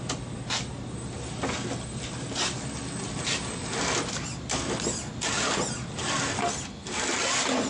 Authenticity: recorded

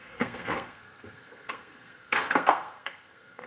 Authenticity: remade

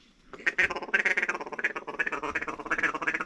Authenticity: recorded